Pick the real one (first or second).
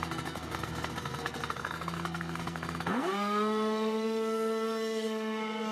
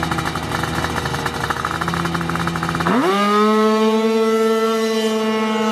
second